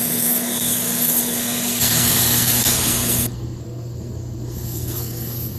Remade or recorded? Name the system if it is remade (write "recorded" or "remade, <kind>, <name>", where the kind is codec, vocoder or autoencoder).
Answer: remade, codec, SNAC